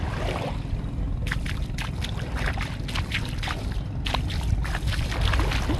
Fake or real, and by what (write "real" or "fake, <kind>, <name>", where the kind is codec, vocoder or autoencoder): real